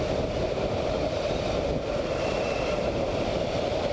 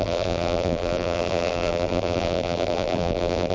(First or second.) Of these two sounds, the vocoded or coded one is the second